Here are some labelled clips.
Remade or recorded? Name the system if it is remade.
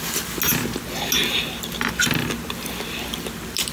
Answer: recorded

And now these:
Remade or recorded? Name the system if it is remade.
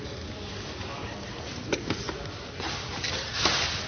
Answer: recorded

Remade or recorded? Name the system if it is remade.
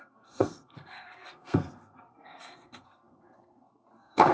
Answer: remade, codec, SNAC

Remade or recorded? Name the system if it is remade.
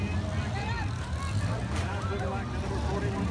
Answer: recorded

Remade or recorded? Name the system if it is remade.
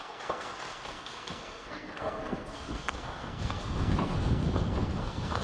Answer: remade, codec, SNAC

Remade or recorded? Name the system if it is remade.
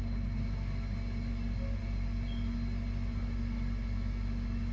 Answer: recorded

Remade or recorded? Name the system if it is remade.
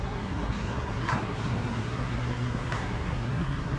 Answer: remade, codec, SNAC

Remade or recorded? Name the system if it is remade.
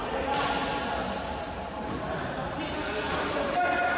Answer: recorded